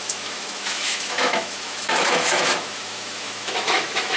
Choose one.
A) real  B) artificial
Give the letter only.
B